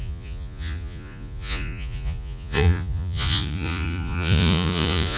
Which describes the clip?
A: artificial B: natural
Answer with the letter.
A